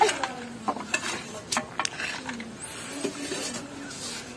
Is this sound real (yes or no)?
yes